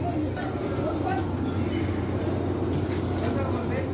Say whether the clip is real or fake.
real